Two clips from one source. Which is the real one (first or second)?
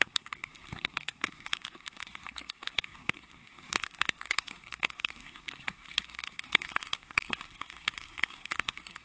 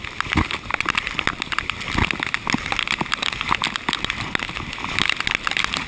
second